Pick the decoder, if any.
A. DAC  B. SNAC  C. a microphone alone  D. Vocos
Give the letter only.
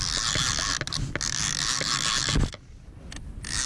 C